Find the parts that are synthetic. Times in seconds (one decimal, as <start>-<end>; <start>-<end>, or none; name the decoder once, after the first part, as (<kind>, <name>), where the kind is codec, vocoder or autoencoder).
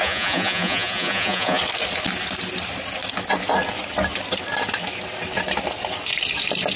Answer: 0.0-1.6 (vocoder, Vocos)